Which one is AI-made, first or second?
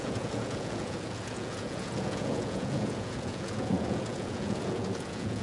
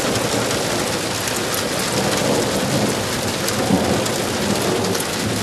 first